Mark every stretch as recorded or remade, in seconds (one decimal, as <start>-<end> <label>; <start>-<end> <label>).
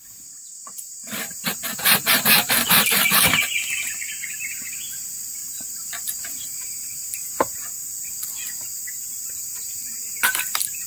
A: 0.0-1.0 recorded; 1.0-3.3 remade; 3.3-5.4 recorded; 5.4-7.7 remade; 7.7-9.1 recorded; 9.1-10.3 remade; 10.3-10.9 recorded